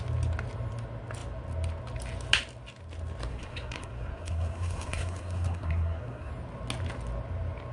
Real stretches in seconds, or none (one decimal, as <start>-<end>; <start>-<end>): 0.0-3.3; 6.3-7.7